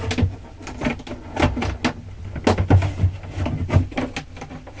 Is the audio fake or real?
real